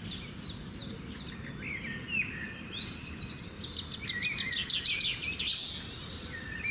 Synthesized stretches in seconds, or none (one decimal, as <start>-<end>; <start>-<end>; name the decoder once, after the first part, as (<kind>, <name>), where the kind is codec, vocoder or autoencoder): none